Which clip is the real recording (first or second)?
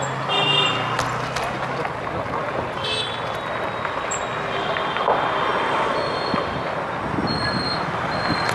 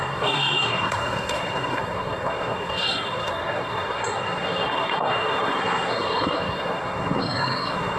first